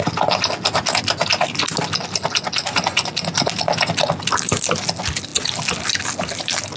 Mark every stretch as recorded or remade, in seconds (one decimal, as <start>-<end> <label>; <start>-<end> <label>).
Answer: 0.0-6.8 recorded